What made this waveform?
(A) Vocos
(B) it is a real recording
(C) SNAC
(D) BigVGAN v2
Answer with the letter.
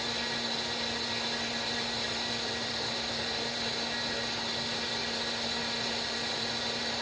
B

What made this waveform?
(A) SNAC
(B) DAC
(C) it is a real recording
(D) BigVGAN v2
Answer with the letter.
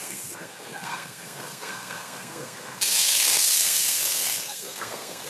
A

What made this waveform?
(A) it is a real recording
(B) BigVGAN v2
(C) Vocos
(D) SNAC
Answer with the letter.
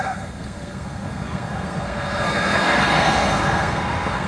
D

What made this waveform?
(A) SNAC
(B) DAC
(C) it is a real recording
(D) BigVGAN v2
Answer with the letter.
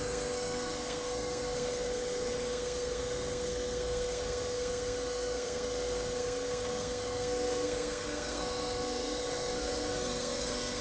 A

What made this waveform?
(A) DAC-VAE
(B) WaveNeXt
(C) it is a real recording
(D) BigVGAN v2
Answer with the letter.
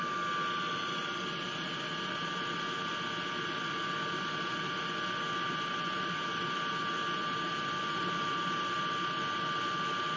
C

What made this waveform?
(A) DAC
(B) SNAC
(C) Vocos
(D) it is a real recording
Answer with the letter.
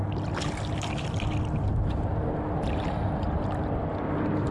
D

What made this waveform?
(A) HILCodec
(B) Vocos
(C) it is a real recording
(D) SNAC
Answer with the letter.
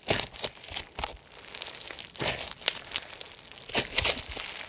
C